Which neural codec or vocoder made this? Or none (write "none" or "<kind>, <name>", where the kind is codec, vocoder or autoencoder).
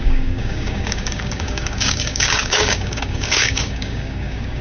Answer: codec, DAC